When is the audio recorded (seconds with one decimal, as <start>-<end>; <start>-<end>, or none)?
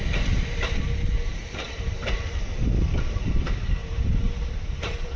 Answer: 0.0-1.3; 2.6-3.8